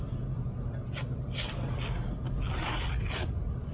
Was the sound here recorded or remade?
recorded